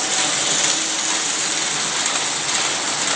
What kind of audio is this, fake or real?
real